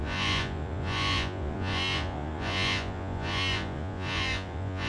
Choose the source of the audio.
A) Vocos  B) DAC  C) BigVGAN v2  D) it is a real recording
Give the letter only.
A